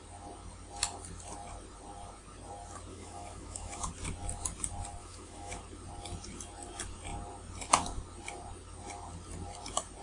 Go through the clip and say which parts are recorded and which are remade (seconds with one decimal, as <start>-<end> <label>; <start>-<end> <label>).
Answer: 0.0-2.9 recorded; 2.9-3.9 remade; 3.9-5.0 recorded; 5.0-5.6 remade; 5.6-10.0 recorded